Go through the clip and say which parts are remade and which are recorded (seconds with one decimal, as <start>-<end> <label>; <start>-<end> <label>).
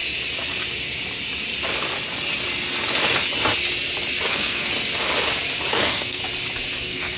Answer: 0.0-4.3 recorded; 4.3-4.7 remade; 4.7-5.7 recorded; 5.7-6.2 remade; 6.2-6.8 recorded; 6.8-7.2 remade